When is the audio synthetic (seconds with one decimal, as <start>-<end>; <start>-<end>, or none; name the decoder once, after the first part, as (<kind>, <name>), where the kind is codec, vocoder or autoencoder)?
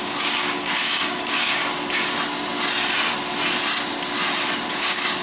0.0-1.6 (codec, DAC); 4.7-5.2